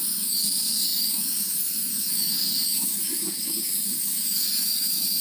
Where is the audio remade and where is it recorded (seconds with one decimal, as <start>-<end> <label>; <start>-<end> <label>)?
0.0-5.2 remade